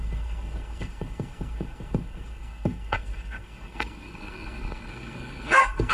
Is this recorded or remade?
remade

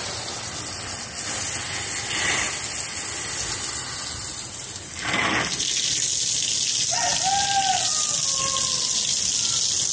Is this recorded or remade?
recorded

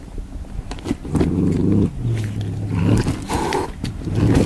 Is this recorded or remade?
recorded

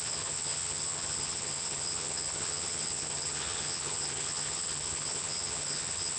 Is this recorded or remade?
remade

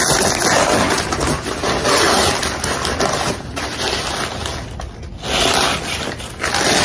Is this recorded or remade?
recorded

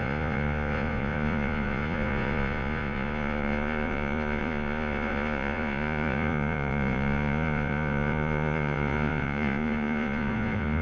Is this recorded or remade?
remade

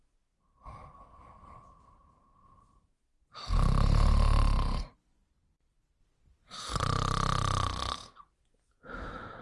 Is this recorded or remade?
recorded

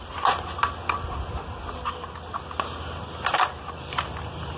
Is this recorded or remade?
recorded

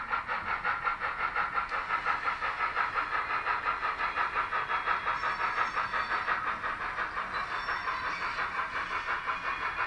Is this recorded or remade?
recorded